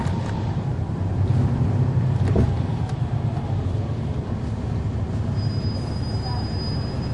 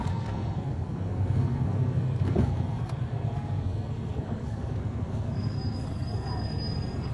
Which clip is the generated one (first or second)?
second